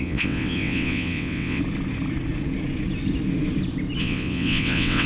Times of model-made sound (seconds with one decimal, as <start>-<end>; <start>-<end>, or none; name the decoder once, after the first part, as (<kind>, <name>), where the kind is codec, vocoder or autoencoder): 0.0-1.6 (vocoder, WaveNeXt); 4.0-5.1